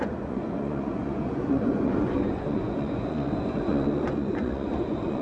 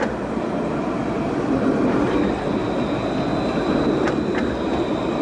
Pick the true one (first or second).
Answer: second